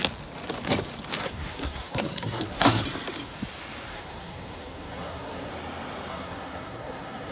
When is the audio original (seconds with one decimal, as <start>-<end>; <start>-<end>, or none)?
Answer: 0.0-1.2; 2.8-3.9; 5.5-6.1